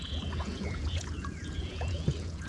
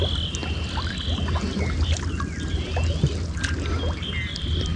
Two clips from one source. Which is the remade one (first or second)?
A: first